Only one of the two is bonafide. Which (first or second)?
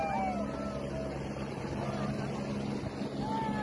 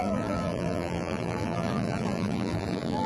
first